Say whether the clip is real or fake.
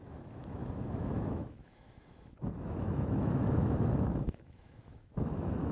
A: fake